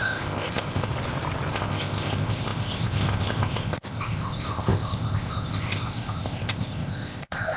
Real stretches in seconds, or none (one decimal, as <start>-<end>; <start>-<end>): 0.9-1.5